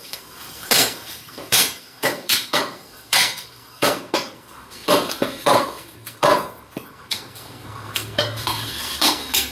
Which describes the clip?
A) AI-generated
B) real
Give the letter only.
A